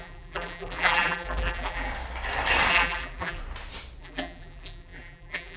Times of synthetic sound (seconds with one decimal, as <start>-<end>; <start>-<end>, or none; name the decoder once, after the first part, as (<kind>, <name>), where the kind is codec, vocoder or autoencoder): 0.0-1.9 (vocoder, BigVGAN v2); 2.7-3.4; 4.0-5.6